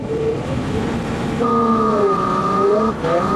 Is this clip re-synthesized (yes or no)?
no